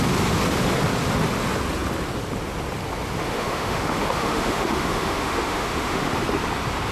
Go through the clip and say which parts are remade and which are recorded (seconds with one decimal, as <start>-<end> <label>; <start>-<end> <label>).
0.0-3.2 recorded; 3.2-6.1 remade; 6.1-6.9 recorded